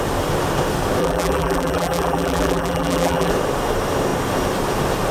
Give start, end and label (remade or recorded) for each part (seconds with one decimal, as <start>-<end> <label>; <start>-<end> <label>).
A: 0.0-1.0 recorded; 1.0-3.3 remade; 3.3-5.1 recorded